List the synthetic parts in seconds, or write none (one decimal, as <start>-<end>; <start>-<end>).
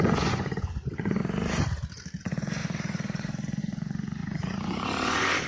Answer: 0.0-1.2; 2.2-5.5